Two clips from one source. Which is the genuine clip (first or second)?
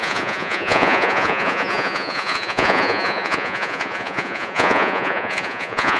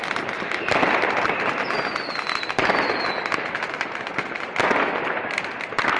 second